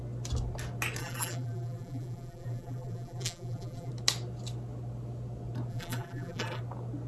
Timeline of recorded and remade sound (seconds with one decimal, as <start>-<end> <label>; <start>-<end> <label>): 0.0-1.0 recorded; 1.0-3.9 remade; 3.9-5.7 recorded; 5.7-6.6 remade; 6.6-7.1 recorded

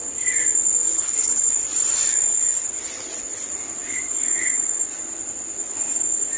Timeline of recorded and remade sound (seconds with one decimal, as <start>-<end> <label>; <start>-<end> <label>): 0.0-0.9 recorded; 0.9-1.5 remade; 1.5-6.4 recorded

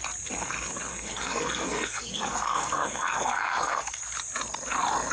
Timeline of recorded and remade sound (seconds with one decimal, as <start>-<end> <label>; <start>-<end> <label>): 0.0-0.9 recorded; 0.9-4.0 remade; 4.0-5.1 recorded